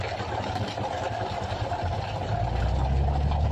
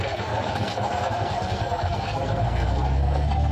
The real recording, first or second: first